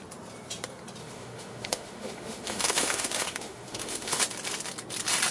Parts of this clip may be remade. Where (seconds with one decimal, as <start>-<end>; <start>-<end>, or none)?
1.0-4.2